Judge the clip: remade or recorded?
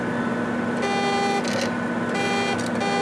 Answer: recorded